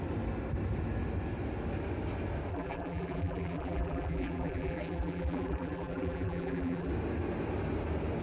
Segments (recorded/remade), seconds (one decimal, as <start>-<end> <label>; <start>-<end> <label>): 0.0-2.5 recorded; 2.5-6.9 remade; 6.9-8.2 recorded